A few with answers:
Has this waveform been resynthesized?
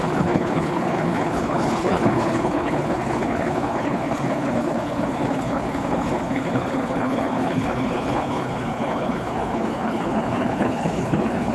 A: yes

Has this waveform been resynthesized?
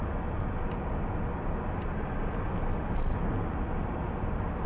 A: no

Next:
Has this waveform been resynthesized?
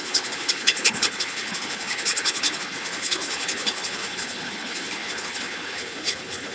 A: yes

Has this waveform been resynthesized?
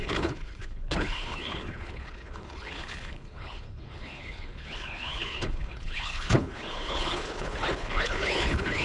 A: yes